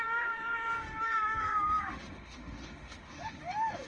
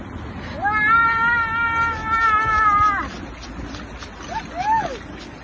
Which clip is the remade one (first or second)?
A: first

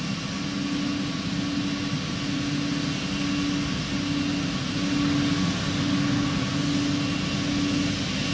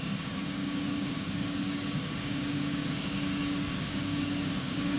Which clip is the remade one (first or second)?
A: second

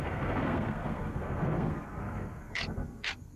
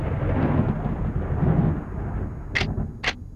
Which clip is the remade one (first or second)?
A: first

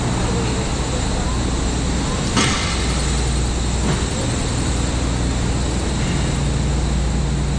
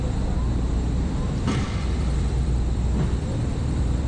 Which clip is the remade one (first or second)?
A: second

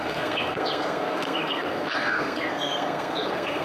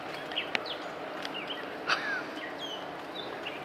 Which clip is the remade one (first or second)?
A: first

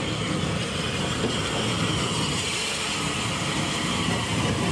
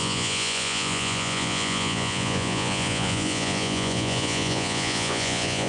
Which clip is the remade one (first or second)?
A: second